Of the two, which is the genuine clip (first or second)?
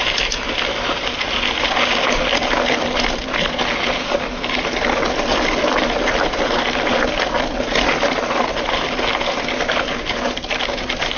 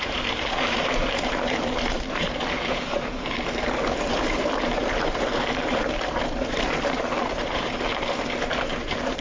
first